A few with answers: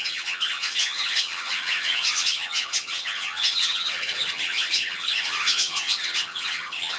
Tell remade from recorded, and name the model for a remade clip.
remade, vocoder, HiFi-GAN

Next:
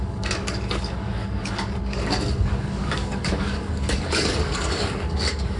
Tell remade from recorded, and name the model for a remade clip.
remade, codec, DAC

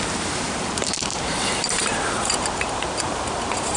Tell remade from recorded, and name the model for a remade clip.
remade, vocoder, BigVGAN v2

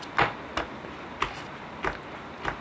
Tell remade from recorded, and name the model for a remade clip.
recorded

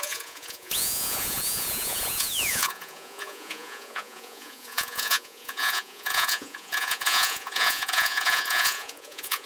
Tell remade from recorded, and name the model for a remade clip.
remade, vocoder, Vocos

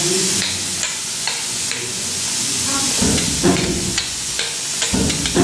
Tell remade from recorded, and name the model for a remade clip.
remade, vocoder, Vocos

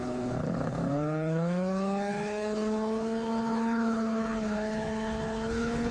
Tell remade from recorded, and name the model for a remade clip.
remade, codec, HILCodec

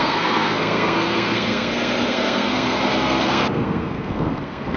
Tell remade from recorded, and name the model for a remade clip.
remade, codec, SNAC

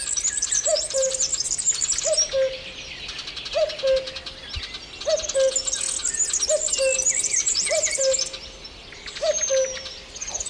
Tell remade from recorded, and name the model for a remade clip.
recorded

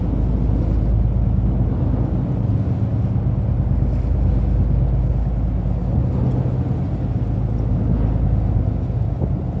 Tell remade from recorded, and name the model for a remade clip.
recorded